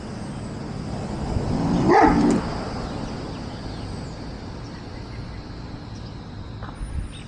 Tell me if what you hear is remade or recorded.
recorded